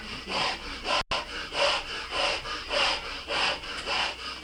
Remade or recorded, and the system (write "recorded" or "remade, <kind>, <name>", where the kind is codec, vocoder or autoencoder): recorded